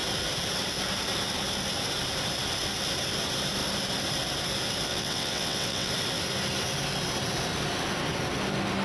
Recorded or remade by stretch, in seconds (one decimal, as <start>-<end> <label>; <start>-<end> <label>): 0.0-4.9 recorded; 4.9-5.9 remade; 5.9-8.8 recorded